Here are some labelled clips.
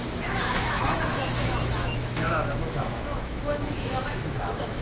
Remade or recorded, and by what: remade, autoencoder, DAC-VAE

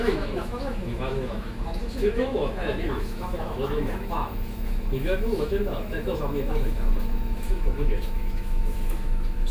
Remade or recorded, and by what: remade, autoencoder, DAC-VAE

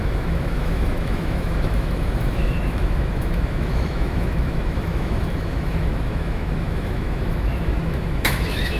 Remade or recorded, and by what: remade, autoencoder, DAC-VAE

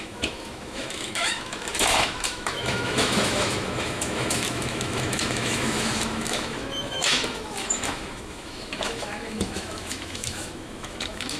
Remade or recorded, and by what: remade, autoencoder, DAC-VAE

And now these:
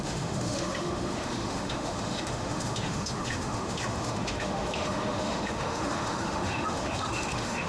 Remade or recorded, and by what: remade, autoencoder, DAC-VAE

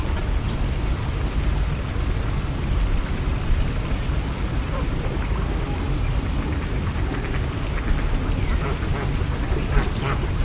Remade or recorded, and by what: recorded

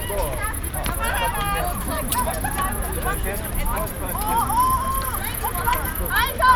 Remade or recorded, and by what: recorded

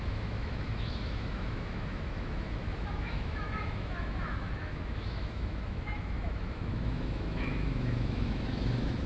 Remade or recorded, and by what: remade, autoencoder, DAC-VAE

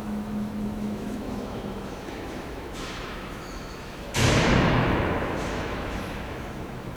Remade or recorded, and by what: remade, autoencoder, DAC-VAE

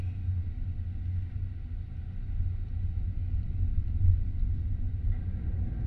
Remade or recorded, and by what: recorded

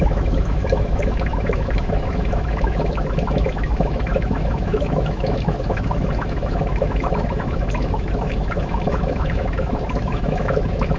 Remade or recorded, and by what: remade, autoencoder, DAC-VAE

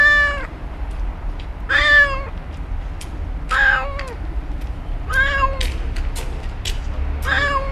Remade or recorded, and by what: recorded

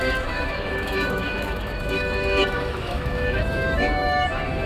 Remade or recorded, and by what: remade, autoencoder, DAC-VAE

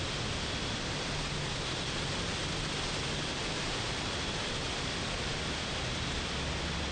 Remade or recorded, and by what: recorded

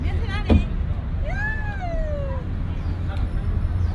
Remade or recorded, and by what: recorded